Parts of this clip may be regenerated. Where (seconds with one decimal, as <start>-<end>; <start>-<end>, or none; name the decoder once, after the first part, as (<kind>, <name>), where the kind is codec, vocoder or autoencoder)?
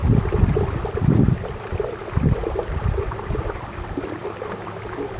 none